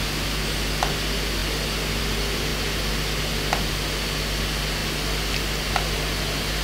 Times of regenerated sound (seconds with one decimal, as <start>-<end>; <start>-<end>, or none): none